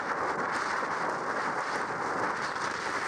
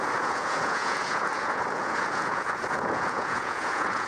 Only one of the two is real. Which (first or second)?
first